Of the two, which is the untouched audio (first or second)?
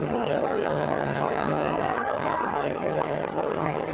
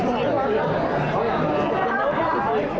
second